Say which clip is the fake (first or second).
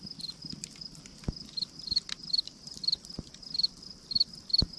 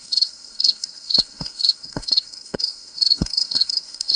second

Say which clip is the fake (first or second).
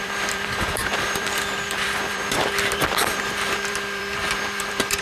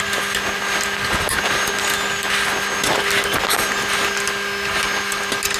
first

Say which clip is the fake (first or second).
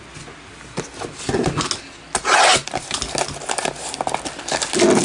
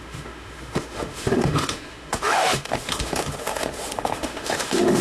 second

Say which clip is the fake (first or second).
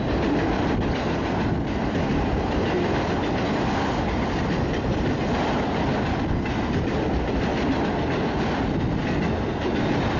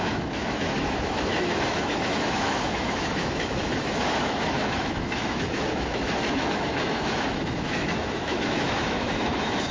second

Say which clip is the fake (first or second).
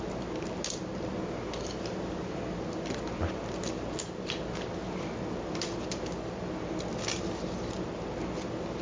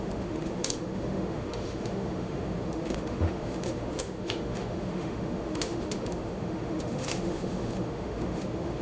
second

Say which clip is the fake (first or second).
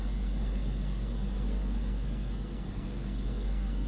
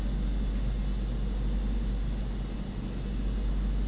first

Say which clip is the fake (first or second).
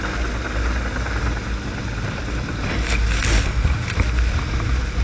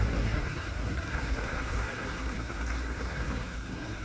second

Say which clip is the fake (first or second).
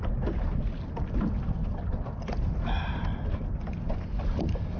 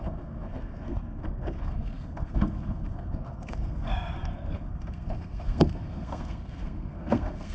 second